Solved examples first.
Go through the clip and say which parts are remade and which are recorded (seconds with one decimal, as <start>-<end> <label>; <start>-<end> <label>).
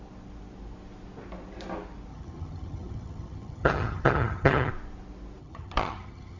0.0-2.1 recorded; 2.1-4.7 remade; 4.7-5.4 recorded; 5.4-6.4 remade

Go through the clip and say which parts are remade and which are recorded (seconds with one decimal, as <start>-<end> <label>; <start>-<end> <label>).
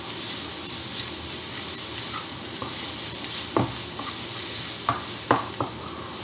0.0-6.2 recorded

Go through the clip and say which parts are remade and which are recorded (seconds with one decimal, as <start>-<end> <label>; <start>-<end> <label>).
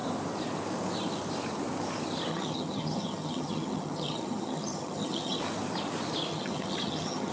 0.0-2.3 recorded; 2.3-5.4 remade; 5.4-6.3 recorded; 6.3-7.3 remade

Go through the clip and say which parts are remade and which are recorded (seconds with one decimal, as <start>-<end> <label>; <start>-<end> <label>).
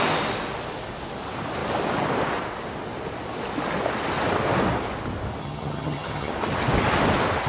0.0-5.4 recorded; 5.4-6.3 remade; 6.3-7.5 recorded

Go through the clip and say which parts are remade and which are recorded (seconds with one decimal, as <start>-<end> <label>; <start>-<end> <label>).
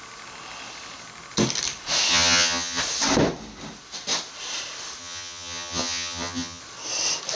0.0-2.1 recorded; 2.1-2.8 remade; 2.8-5.0 recorded; 5.0-6.6 remade; 6.6-7.4 recorded